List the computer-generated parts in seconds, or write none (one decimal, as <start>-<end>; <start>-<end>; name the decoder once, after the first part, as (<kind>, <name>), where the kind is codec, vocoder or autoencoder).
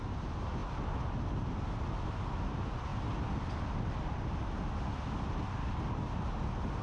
none